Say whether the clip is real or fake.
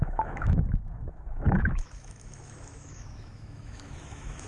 fake